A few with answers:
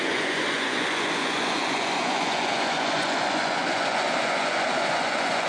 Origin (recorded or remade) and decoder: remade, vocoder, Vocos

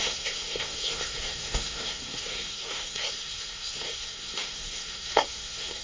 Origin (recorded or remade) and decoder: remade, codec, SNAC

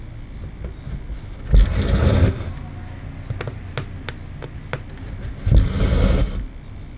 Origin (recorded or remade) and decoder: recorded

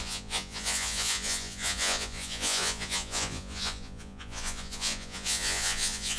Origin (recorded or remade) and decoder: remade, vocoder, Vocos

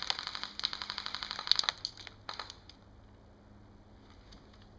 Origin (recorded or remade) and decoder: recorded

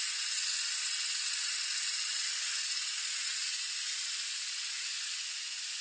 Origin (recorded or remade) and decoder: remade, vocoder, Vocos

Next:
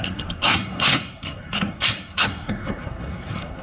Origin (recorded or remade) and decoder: remade, codec, SNAC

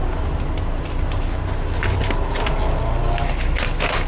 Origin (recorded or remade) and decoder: recorded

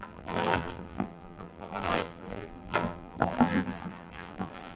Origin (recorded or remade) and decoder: remade, vocoder, BigVGAN v2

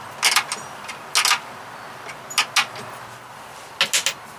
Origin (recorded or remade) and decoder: recorded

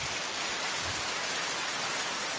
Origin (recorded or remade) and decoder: recorded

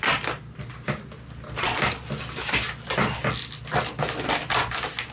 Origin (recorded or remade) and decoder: recorded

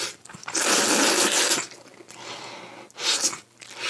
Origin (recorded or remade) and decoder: recorded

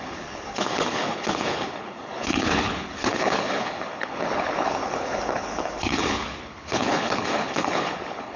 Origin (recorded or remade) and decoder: remade, codec, HILCodec